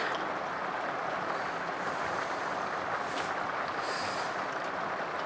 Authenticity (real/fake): real